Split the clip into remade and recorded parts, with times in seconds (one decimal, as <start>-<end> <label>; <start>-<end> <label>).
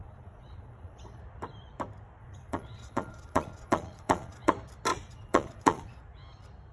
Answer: 0.0-1.2 remade; 1.2-2.2 recorded; 2.2-4.5 remade; 4.5-4.9 recorded; 4.9-6.0 remade; 6.0-6.7 recorded